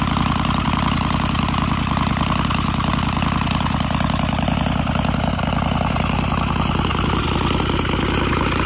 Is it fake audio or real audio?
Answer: real